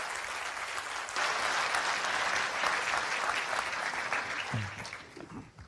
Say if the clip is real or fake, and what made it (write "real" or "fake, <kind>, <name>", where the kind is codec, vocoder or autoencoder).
real